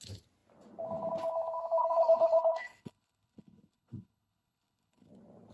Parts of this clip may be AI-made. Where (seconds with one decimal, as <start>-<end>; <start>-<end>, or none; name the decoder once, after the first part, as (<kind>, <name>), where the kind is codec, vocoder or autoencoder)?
1.8-5.1 (codec, HILCodec)